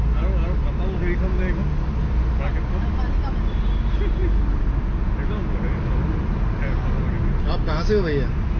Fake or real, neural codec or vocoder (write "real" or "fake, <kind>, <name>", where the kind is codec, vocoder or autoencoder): real